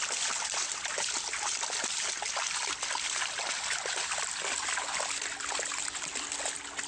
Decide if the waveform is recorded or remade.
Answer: recorded